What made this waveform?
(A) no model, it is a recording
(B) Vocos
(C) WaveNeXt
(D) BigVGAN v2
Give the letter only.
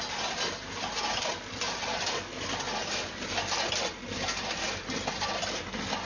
A